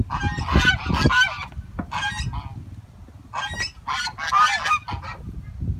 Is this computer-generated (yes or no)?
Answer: no